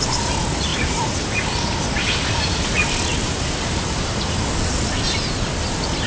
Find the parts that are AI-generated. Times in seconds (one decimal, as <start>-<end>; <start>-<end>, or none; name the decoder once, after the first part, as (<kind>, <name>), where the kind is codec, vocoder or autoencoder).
0.7-1.3 (vocoder, BigVGAN v2); 3.1-4.4